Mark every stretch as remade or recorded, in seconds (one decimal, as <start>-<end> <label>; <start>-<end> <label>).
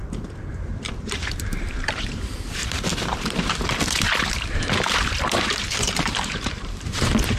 0.0-0.5 recorded; 0.5-2.9 remade; 2.9-4.2 recorded; 4.2-7.4 remade